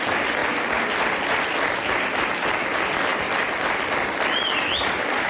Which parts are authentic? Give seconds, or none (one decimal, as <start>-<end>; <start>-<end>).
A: 0.0-5.3